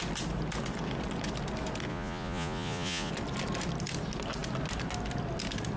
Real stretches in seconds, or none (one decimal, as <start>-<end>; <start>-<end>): 0.0-1.9; 3.1-5.8